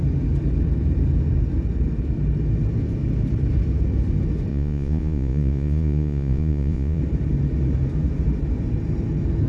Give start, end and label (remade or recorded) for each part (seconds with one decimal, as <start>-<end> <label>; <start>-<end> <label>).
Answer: 0.0-4.5 recorded; 4.5-7.0 remade; 7.0-9.5 recorded